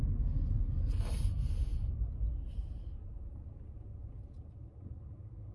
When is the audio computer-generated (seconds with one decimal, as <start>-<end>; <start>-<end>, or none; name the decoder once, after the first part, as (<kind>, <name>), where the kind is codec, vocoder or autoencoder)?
none